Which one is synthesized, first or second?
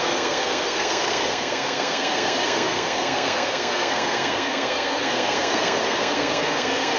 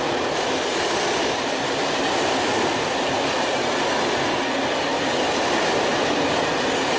first